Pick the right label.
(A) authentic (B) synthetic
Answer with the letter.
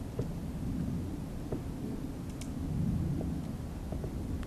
A